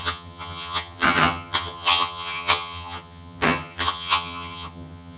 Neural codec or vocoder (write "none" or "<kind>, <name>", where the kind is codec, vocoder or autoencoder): vocoder, HiFi-GAN